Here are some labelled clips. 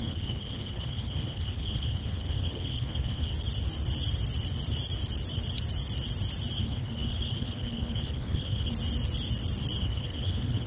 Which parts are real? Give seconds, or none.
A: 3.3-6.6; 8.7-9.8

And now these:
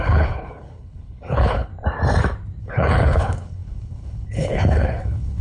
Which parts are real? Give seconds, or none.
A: 1.7-2.6

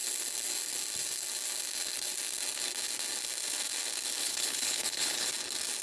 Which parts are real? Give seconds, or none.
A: 0.0-4.2; 5.3-5.8

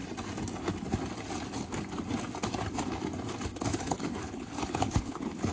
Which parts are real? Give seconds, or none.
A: 0.0-3.7

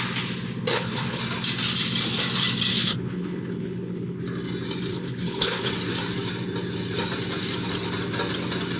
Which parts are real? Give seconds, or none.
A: 0.0-0.7; 1.2-2.7; 4.2-4.9; 5.7-8.8

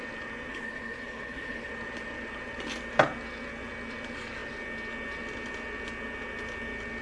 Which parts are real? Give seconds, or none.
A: 0.0-0.5; 1.7-7.0

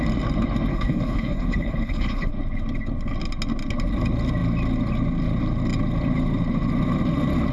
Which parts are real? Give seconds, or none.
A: 0.0-0.7; 2.3-7.5